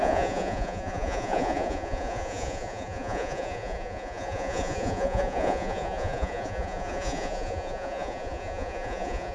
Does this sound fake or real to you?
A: fake